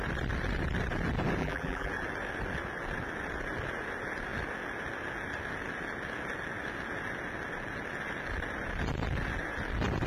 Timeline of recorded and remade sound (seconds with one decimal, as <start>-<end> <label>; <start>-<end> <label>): 0.0-1.4 recorded; 1.4-1.9 remade; 1.9-10.1 recorded